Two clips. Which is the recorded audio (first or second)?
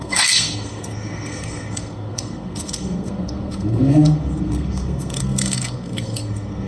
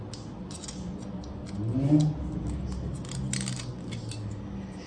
second